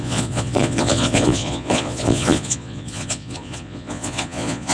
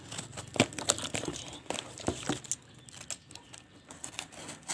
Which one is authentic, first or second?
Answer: second